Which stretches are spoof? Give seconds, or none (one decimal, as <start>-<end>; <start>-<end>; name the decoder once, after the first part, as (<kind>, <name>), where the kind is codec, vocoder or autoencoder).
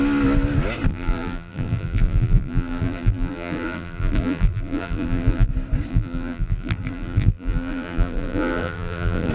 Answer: 0.9-5.5 (vocoder, BigVGAN v2); 5.9-9.3